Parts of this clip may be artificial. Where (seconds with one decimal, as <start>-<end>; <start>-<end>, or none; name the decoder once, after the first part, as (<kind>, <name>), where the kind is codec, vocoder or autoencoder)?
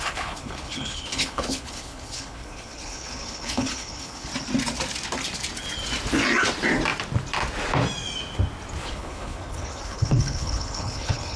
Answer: 0.0-4.3 (codec, HILCodec); 8.8-11.4